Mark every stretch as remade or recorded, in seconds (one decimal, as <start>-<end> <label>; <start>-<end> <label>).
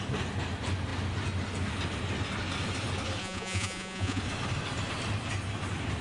0.0-3.2 recorded; 3.2-4.2 remade; 4.2-6.0 recorded